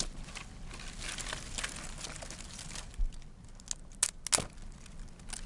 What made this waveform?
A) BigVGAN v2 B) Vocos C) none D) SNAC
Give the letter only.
C